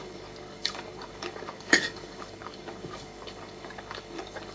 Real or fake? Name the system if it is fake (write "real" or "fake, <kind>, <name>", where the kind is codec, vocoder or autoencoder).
fake, codec, DAC